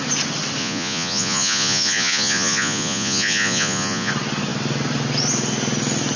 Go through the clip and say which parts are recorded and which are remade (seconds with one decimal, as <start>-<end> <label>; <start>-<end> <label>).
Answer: 0.0-0.6 recorded; 0.6-4.1 remade; 4.1-6.2 recorded